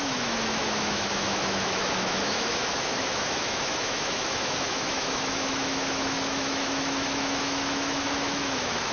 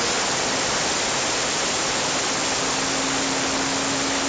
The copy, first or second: first